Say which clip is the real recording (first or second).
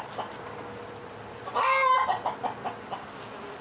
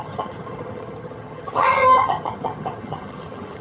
first